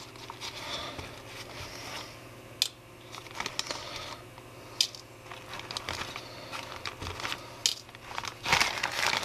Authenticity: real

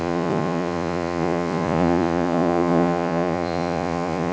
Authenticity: fake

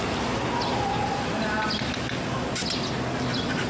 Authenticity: real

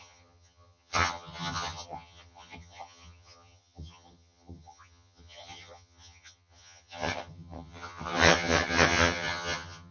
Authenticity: fake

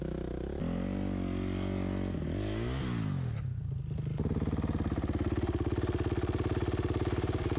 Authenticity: real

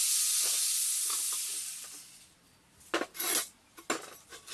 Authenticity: real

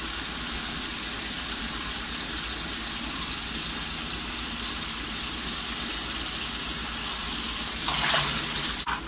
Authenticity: real